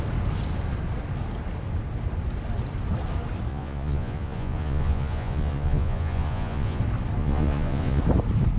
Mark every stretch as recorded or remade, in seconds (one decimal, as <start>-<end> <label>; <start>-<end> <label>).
0.0-3.5 recorded; 3.5-6.8 remade; 6.8-7.2 recorded; 7.2-8.0 remade; 8.0-8.6 recorded